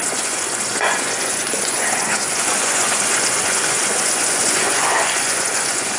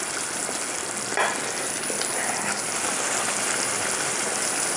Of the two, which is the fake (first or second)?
first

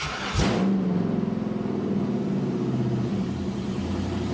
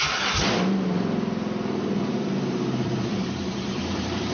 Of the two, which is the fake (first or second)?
second